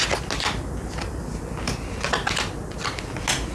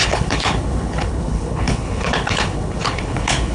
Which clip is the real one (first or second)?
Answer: first